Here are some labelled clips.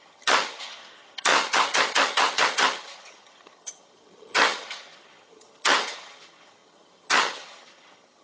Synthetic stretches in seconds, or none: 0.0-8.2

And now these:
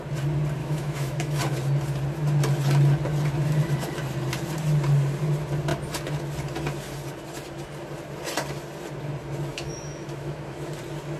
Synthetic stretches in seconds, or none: 0.6-1.4; 9.5-10.7

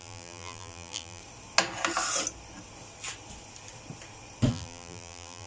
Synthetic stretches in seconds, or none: 0.0-1.2; 4.5-5.5

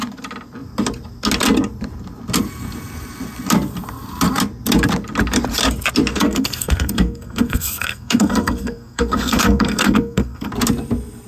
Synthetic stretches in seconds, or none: 6.1-10.5

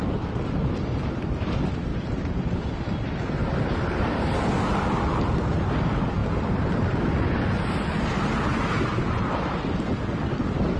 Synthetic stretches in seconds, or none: none